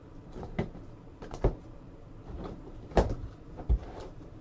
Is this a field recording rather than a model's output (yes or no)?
no